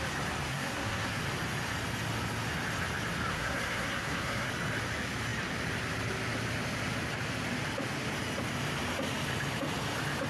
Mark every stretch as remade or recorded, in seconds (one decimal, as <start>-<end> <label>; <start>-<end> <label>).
0.0-0.5 recorded; 0.5-1.2 remade; 1.2-3.3 recorded; 3.3-4.5 remade; 4.5-10.3 recorded